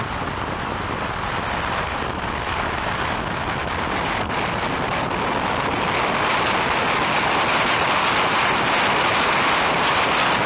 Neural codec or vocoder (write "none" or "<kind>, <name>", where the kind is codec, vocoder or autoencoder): none